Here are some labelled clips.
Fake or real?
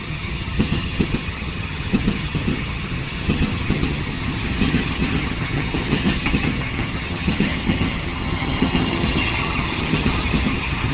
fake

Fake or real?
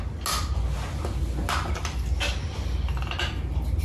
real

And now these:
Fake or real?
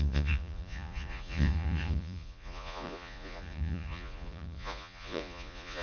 fake